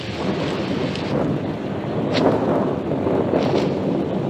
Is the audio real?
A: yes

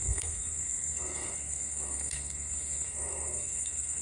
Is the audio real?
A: no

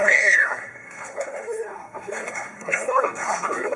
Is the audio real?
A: no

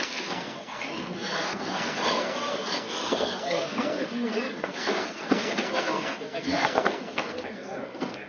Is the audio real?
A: no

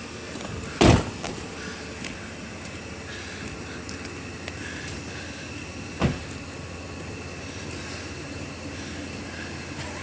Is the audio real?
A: yes